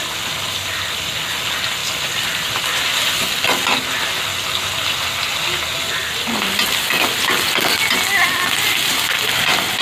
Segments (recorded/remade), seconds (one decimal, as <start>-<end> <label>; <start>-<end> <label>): 0.0-9.8 recorded